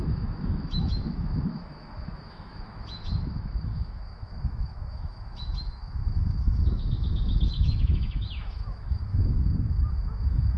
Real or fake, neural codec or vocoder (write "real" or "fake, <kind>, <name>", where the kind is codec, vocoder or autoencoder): fake, autoencoder, DAC-VAE